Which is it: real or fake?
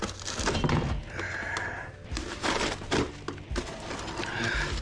real